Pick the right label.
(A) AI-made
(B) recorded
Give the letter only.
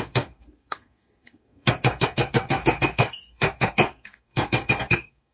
A